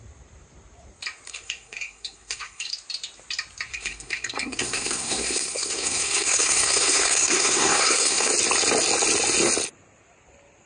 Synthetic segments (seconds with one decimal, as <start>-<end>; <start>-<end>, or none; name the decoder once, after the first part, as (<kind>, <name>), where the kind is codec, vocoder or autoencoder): 1.3-2.7 (codec, SNAC); 3.7-8.3